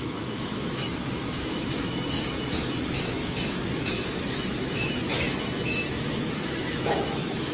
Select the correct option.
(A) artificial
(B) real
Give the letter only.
A